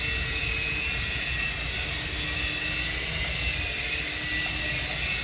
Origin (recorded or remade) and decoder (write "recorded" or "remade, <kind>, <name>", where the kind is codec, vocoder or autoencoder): recorded